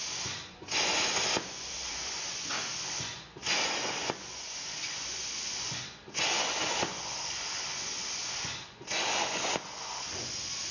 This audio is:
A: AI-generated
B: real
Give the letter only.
A